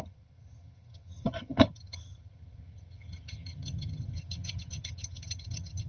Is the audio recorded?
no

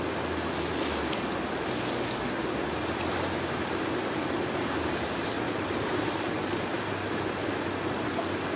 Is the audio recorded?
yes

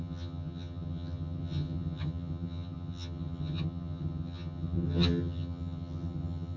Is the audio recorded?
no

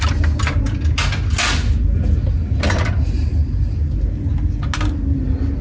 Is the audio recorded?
yes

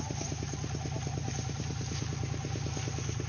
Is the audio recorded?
yes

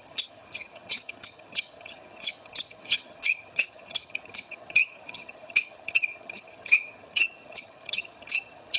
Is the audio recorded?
no